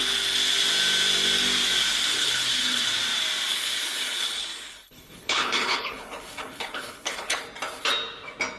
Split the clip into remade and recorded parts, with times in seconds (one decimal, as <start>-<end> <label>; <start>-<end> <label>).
0.0-2.1 recorded; 2.1-2.9 remade; 2.9-3.5 recorded; 3.5-7.4 remade; 7.4-8.6 recorded

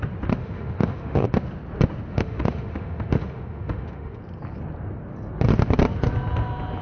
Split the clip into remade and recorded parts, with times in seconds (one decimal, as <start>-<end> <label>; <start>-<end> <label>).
0.0-0.4 recorded; 0.4-1.3 remade; 1.3-2.1 recorded; 2.1-4.2 remade; 4.2-6.8 recorded

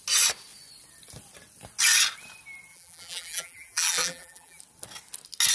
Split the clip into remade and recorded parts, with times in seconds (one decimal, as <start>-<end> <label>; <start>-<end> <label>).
0.0-2.7 recorded; 2.7-4.6 remade; 4.6-5.5 recorded

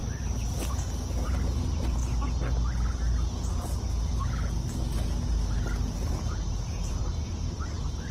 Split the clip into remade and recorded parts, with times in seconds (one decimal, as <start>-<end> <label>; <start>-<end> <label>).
0.0-0.7 recorded; 0.7-2.0 remade; 2.0-6.9 recorded; 6.9-8.1 remade

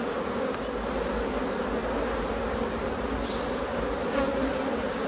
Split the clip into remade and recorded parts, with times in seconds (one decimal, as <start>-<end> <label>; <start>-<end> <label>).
0.0-5.1 recorded

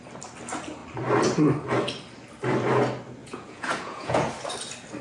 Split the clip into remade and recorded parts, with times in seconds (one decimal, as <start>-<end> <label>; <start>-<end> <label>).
0.0-3.2 recorded; 3.2-4.3 remade; 4.3-5.0 recorded

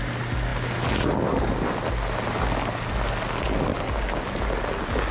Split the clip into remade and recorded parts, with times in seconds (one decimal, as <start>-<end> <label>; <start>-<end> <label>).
0.0-5.1 recorded